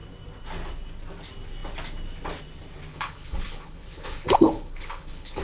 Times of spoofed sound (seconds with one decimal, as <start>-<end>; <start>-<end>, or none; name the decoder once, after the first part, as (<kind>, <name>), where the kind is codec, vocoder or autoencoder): 2.9-5.4 (codec, HILCodec)